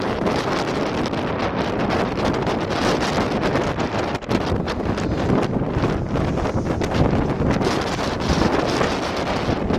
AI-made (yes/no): no